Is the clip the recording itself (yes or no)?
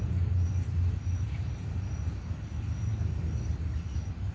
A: yes